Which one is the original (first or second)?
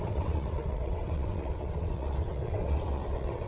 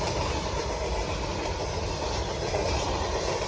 second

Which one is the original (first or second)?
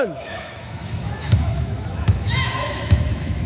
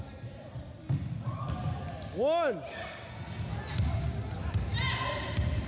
second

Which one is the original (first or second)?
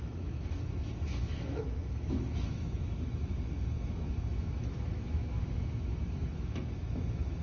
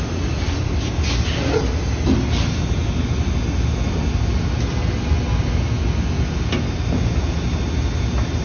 second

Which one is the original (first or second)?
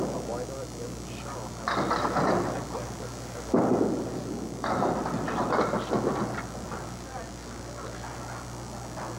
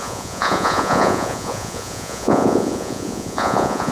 first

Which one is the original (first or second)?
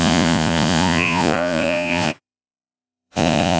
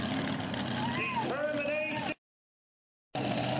second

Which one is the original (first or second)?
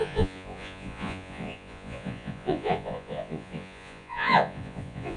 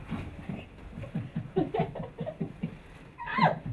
second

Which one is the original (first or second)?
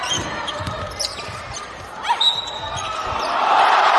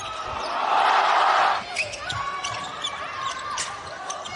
second